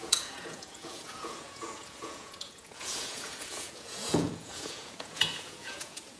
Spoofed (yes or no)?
yes